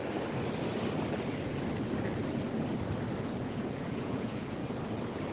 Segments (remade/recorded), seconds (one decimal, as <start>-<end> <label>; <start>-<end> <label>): 0.0-3.2 recorded; 3.2-4.6 remade; 4.6-5.3 recorded